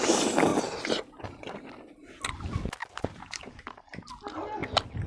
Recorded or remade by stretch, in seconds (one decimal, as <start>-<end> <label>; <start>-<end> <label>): 0.0-2.8 recorded; 2.8-4.1 remade; 4.1-4.6 recorded; 4.6-5.1 remade